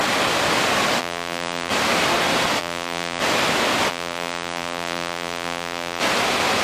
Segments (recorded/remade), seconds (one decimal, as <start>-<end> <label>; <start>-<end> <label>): 0.0-1.0 recorded; 1.0-1.7 remade; 1.7-2.6 recorded; 2.6-3.2 remade; 3.2-3.9 recorded; 3.9-6.0 remade; 6.0-6.6 recorded